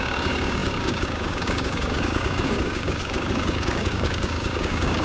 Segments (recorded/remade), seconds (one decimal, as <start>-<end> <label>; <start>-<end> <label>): 0.0-5.0 remade